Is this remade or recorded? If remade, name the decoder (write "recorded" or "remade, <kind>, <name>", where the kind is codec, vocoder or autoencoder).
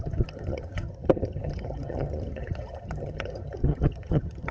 remade, vocoder, HiFi-GAN